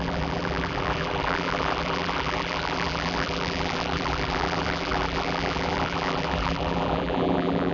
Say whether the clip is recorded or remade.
remade